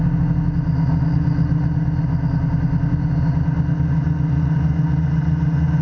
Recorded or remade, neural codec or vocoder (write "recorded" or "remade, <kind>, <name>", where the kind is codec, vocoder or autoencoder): recorded